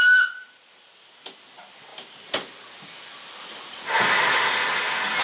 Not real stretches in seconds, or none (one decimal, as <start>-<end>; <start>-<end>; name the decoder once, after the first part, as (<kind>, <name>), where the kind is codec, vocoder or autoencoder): none